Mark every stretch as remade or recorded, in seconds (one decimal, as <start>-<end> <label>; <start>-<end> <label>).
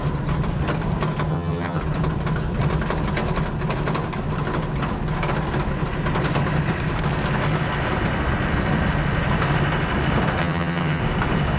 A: 0.0-1.3 recorded; 1.3-1.8 remade; 1.8-10.4 recorded; 10.4-11.0 remade; 11.0-11.6 recorded